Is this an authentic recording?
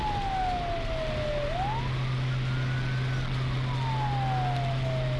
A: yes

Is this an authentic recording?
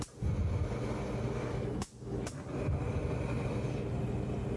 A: yes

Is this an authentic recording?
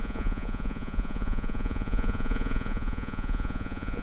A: no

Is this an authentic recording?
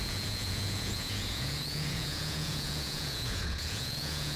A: no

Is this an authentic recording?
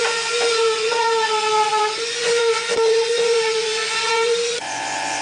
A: no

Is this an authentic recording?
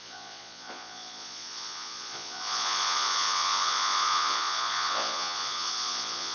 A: no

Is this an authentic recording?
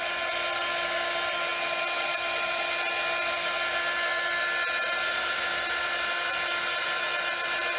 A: yes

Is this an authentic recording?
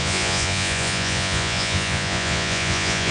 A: no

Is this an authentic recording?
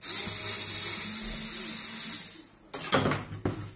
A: yes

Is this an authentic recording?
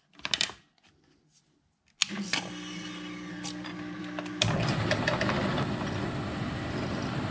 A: yes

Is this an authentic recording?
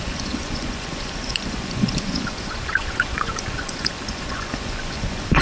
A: no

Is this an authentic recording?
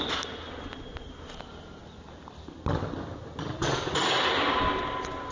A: yes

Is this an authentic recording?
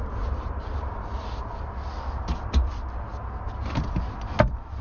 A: yes